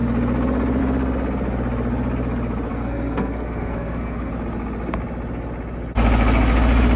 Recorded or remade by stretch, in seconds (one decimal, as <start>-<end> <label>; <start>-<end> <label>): 0.0-2.7 recorded; 2.7-4.3 remade; 4.3-7.0 recorded